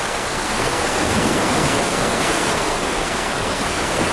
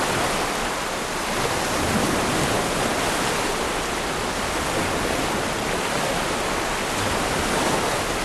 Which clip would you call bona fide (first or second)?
second